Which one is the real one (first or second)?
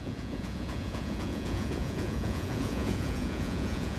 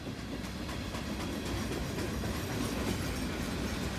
second